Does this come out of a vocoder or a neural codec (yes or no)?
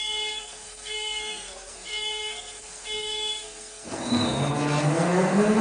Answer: yes